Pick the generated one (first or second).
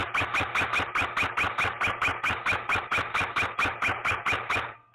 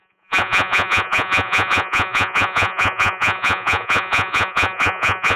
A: second